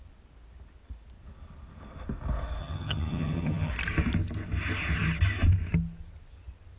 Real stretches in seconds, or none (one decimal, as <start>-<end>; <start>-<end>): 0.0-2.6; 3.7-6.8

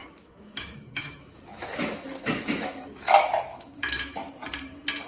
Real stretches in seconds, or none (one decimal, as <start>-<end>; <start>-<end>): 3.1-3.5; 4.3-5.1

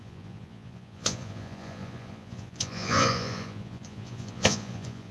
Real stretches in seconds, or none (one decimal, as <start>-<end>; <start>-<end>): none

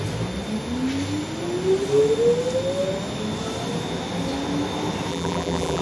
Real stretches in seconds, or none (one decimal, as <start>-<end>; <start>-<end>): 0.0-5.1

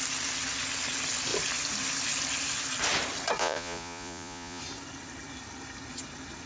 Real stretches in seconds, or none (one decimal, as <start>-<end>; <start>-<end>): 0.0-3.4; 4.6-6.5